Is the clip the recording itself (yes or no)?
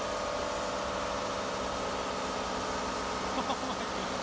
yes